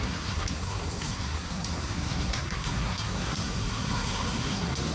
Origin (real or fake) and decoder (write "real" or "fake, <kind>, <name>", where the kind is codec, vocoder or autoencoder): fake, codec, SNAC